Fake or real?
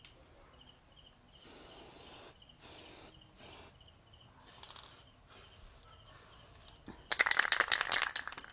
real